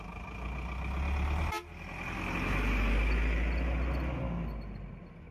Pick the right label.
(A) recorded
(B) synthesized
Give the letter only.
A